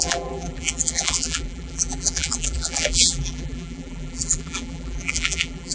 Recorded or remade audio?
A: remade